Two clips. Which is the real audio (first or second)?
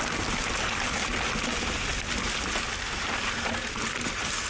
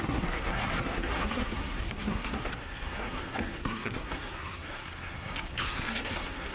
first